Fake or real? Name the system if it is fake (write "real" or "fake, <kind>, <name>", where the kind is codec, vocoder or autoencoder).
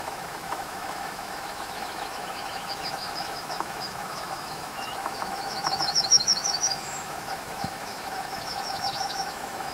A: fake, autoencoder, DAC-VAE